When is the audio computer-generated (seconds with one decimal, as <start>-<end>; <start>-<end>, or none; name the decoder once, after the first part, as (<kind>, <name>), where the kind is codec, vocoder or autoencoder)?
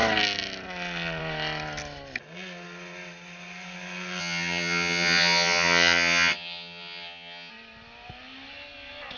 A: 4.2-7.5 (vocoder, HiFi-GAN)